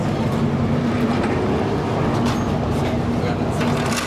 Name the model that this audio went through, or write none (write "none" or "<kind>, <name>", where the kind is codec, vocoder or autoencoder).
none